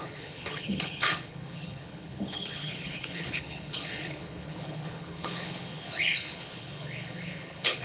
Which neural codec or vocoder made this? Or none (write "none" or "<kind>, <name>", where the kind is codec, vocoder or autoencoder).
codec, HILCodec